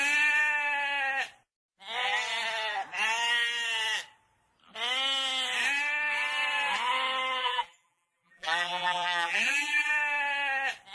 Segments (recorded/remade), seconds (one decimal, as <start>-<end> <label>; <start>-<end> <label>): 0.0-7.4 recorded; 7.4-9.9 remade; 9.9-10.9 recorded